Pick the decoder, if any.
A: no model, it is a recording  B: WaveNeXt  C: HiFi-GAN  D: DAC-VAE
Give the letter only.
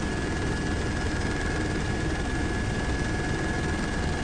A